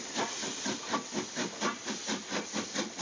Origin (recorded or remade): recorded